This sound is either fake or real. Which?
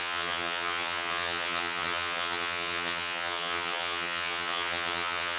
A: fake